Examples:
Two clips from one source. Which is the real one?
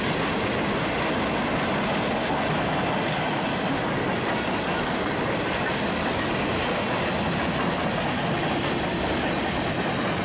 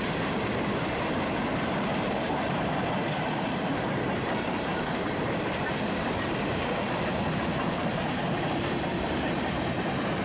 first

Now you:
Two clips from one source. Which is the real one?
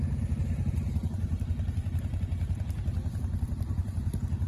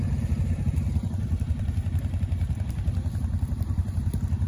first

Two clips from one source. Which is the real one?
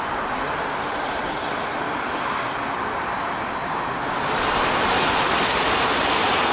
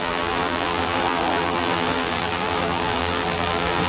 first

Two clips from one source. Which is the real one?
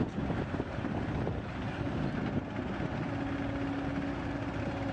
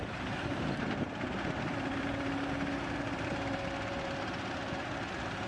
first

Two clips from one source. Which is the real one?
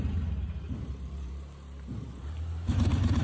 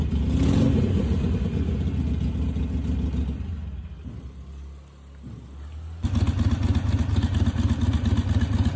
second